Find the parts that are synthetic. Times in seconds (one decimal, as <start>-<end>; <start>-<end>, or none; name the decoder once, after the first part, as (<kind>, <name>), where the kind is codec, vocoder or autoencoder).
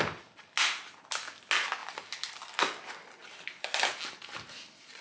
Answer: none